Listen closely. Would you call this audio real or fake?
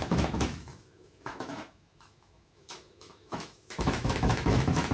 fake